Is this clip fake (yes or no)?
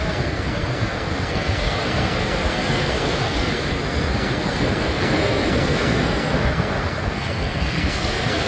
yes